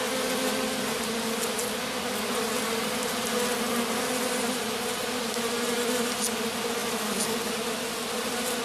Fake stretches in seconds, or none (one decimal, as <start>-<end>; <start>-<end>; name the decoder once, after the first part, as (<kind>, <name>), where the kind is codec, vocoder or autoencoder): none